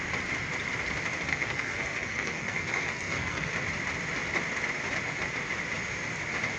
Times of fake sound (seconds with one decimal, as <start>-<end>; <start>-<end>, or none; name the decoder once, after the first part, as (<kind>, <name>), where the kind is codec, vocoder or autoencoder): 1.3-3.5 (codec, SNAC)